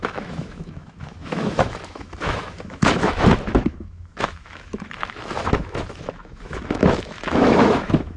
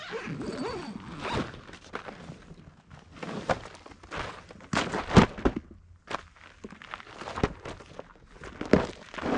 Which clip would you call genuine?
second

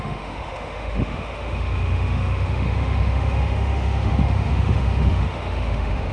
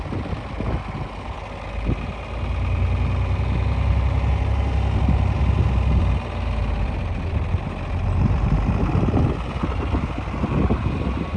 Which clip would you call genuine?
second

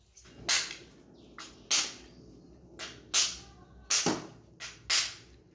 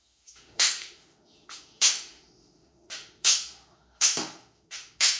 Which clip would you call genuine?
first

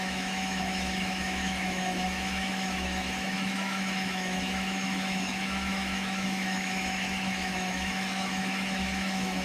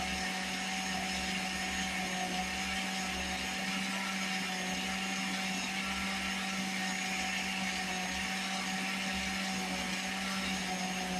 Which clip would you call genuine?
second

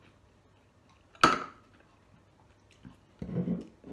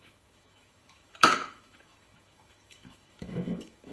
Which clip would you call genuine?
first